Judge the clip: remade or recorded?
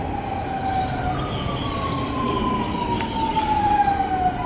recorded